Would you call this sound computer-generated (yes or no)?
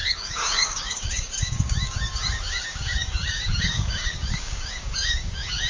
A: yes